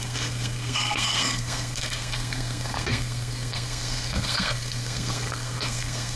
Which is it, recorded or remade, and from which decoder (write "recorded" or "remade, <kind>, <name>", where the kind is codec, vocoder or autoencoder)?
remade, codec, SNAC